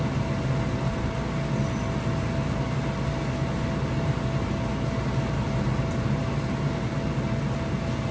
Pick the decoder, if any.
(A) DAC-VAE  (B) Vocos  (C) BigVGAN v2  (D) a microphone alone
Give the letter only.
D